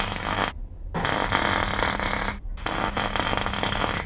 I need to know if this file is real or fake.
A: real